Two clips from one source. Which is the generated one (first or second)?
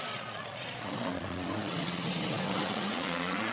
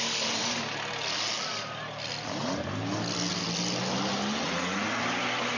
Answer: first